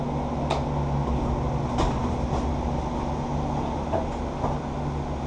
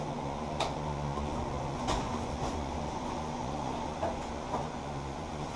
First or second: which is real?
first